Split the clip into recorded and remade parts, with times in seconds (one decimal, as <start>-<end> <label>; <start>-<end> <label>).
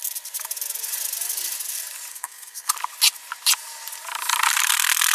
0.0-2.1 recorded; 2.1-2.7 remade; 2.7-5.1 recorded